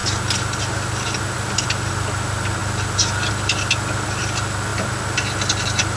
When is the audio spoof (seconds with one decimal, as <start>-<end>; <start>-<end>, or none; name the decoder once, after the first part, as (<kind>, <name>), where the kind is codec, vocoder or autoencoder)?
none